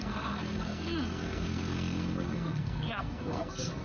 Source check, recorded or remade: remade